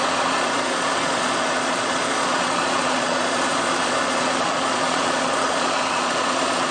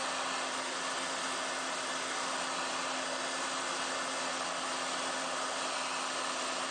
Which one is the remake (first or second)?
first